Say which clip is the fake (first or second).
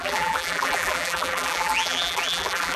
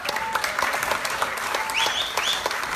first